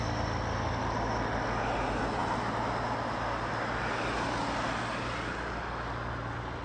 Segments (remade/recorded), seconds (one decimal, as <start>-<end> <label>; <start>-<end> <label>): 0.0-6.6 recorded